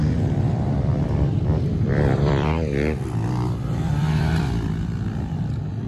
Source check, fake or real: fake